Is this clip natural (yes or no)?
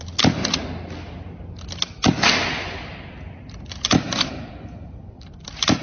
yes